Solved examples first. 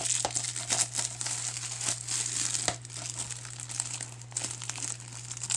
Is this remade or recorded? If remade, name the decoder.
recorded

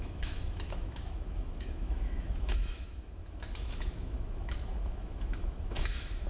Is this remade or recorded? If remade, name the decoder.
remade, autoencoder, DAC-VAE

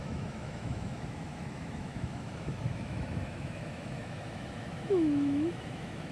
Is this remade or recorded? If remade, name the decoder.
remade, autoencoder, DAC-VAE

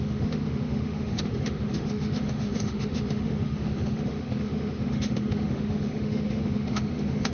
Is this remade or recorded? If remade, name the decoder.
remade, autoencoder, DAC-VAE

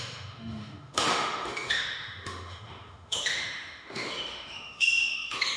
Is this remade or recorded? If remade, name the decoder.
remade, autoencoder, DAC-VAE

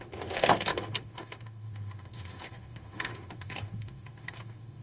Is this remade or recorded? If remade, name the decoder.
remade, autoencoder, DAC-VAE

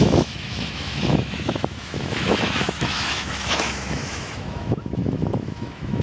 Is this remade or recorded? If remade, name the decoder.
remade, autoencoder, DAC-VAE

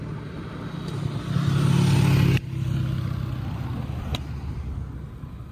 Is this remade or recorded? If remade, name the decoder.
recorded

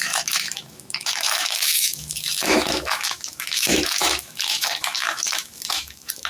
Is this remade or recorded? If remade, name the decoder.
remade, autoencoder, DAC-VAE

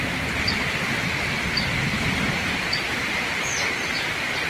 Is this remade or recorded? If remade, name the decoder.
recorded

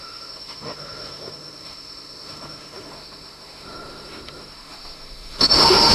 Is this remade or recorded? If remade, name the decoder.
remade, autoencoder, DAC-VAE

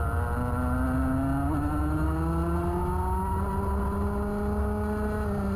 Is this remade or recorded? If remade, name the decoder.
recorded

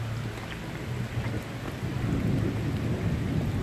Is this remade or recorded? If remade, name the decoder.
recorded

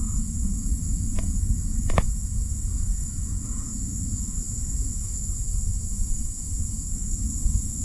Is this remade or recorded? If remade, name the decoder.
remade, autoencoder, DAC-VAE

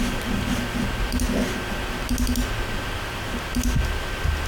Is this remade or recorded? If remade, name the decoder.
recorded